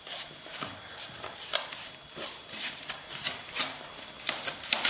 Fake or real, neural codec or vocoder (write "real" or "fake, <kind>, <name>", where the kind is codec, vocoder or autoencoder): fake, vocoder, BigVGAN v2